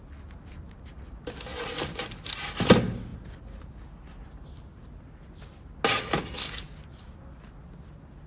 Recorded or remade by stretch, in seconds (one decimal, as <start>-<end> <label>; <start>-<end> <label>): 0.0-8.3 recorded

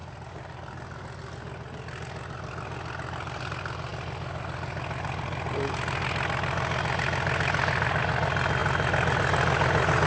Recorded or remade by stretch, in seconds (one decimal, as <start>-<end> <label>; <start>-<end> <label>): 0.0-10.1 recorded

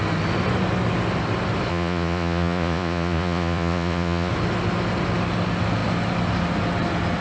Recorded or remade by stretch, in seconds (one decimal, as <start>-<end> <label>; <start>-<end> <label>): 0.0-1.7 recorded; 1.7-4.3 remade; 4.3-7.2 recorded